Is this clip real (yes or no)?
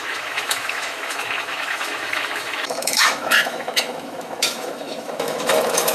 no